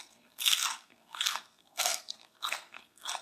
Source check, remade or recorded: remade